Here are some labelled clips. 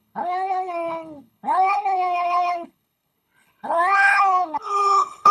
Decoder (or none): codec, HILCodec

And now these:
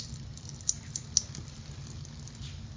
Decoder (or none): none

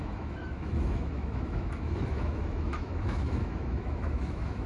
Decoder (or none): autoencoder, DAC-VAE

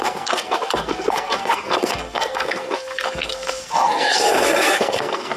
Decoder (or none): codec, SNAC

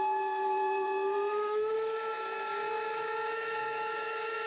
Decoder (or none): autoencoder, DAC-VAE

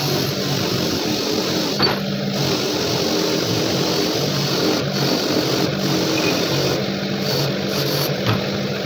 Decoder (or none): none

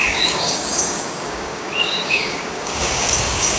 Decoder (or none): codec, DAC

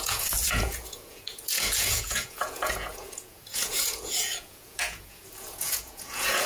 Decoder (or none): vocoder, Vocos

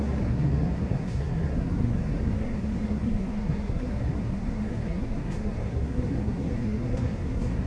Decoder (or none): codec, SNAC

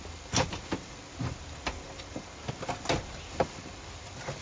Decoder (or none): none